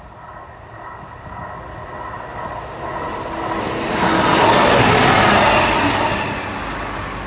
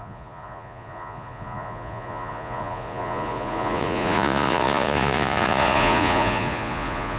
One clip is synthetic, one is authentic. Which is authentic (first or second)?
first